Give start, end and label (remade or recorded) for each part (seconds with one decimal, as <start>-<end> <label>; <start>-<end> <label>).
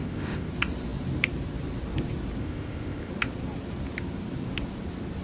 0.0-0.5 remade; 0.5-2.4 recorded; 2.4-3.1 remade; 3.1-5.2 recorded